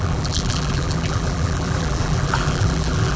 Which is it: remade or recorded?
remade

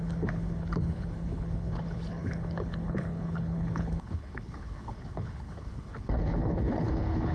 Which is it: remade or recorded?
remade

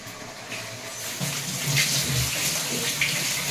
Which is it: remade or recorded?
recorded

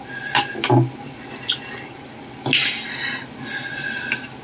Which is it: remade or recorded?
recorded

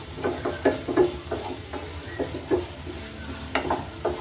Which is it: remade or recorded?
recorded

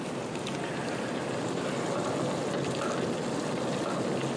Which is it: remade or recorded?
recorded